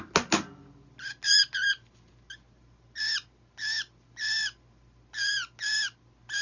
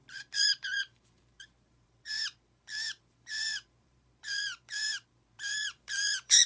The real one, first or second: first